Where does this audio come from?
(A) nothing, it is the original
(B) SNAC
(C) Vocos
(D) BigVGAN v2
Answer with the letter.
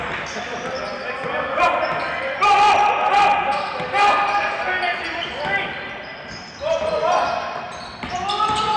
A